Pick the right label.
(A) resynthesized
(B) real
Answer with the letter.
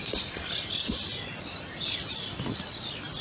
B